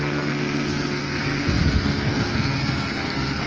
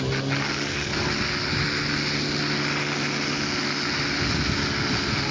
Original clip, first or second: second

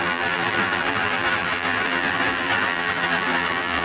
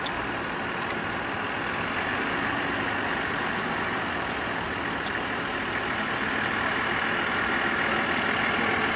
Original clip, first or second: second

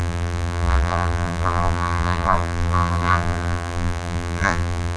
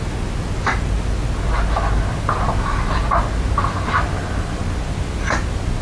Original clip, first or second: second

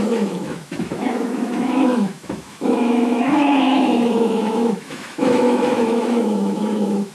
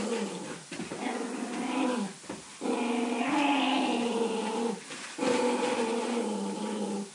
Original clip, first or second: second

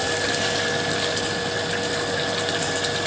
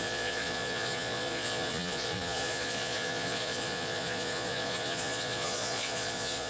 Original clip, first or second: first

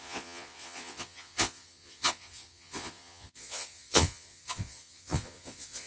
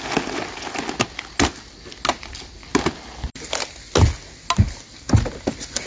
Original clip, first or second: second